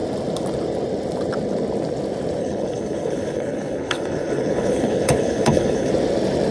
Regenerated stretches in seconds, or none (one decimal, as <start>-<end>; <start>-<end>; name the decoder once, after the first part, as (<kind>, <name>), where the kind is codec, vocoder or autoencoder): 2.4-5.9 (codec, HILCodec)